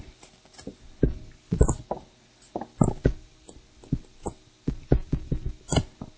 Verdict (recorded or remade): recorded